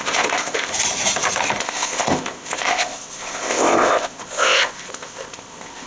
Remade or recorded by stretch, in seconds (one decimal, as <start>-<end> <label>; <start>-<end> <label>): 0.0-0.7 remade; 0.7-1.6 recorded; 1.6-5.9 remade